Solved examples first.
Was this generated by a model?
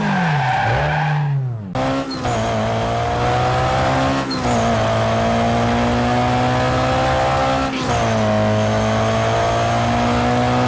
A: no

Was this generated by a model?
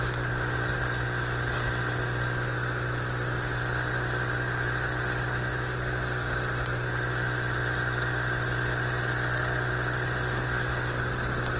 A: no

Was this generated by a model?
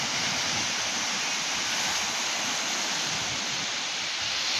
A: no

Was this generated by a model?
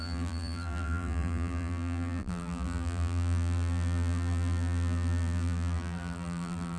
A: yes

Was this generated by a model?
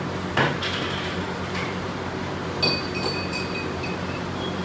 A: yes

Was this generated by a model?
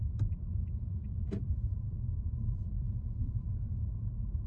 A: yes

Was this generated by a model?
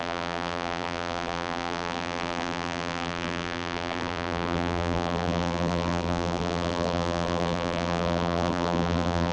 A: yes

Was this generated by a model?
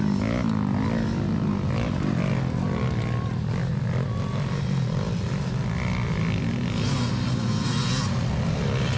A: no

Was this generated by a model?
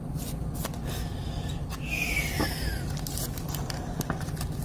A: no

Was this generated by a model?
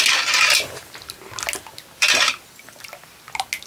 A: no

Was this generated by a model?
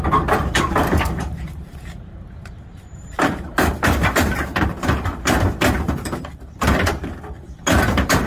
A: yes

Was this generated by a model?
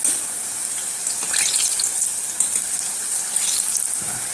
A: no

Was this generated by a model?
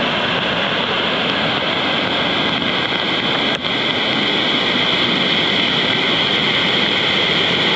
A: no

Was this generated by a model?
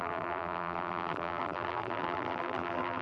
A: yes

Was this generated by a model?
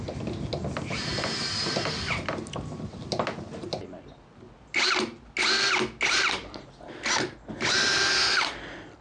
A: no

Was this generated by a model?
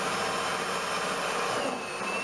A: no